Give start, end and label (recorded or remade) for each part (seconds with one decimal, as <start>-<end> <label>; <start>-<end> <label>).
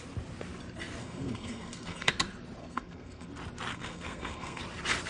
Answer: 0.0-1.0 recorded; 1.0-2.1 remade; 2.1-2.6 recorded; 2.6-3.3 remade; 3.3-3.7 recorded; 3.7-4.6 remade; 4.6-5.1 recorded